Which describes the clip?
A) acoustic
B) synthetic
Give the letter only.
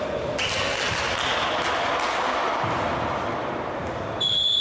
A